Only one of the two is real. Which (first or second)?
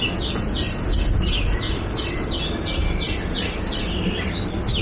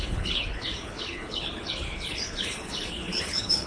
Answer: first